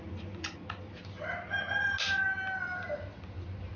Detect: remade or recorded recorded